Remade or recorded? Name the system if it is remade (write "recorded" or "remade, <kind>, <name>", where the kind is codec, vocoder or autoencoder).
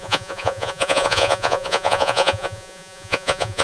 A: remade, vocoder, Vocos